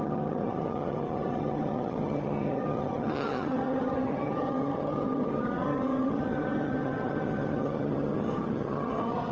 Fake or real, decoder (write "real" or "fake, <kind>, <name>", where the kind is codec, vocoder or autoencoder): fake, vocoder, HiFi-GAN